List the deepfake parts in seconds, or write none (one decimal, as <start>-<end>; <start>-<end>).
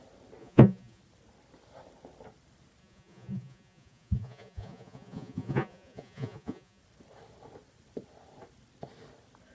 0.4-1.0; 2.8-6.8